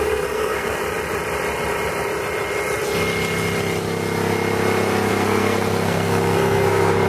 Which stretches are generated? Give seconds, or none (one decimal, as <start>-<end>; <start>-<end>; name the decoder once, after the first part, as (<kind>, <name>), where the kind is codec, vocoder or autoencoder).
0.0-0.8 (codec, SNAC); 5.1-7.1